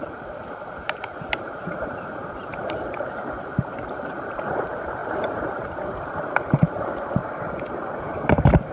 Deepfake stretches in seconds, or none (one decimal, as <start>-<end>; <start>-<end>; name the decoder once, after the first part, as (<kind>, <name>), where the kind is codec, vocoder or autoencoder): 0.0-7.2 (vocoder, BigVGAN v2); 8.0-8.7